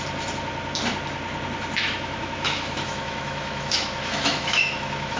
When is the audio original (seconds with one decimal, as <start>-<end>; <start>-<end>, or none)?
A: 0.0-1.8